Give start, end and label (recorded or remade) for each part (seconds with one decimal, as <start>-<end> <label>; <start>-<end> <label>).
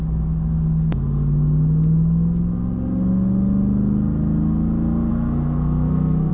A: 0.0-5.1 recorded; 5.1-6.3 remade